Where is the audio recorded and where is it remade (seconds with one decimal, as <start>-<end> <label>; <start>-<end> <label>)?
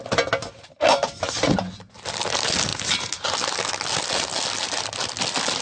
0.0-5.6 recorded